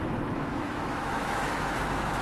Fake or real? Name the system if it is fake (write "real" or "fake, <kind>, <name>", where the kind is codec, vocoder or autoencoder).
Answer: fake, autoencoder, DAC-VAE